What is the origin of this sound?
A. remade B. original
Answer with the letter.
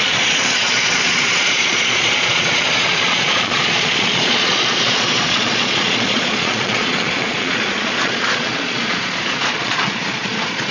A